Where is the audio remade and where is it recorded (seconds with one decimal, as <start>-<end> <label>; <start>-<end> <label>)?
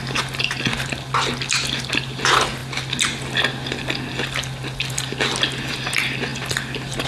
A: 0.0-6.3 recorded; 6.3-7.1 remade